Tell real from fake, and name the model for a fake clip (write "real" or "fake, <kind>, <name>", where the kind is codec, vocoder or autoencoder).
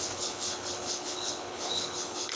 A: fake, codec, HILCodec